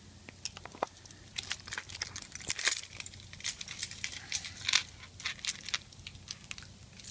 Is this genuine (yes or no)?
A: yes